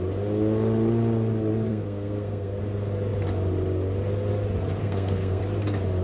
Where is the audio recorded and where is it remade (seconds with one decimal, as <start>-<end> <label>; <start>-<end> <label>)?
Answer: 0.0-1.7 recorded; 1.7-2.6 remade; 2.6-4.8 recorded; 4.8-5.4 remade; 5.4-6.0 recorded